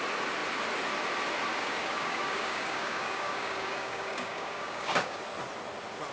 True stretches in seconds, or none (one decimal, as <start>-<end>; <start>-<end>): 0.0-1.5; 5.2-6.1

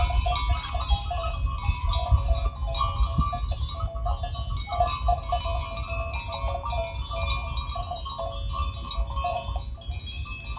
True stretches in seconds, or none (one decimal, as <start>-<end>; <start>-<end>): 0.0-10.6